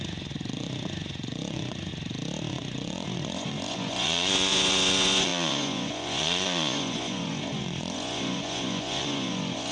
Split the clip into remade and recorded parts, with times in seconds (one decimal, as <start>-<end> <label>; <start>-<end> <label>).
0.0-1.9 remade; 1.9-2.5 recorded; 2.5-9.7 remade